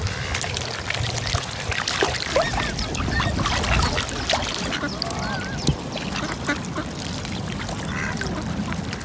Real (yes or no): yes